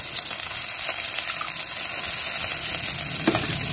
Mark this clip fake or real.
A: real